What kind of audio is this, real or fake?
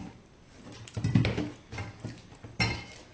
real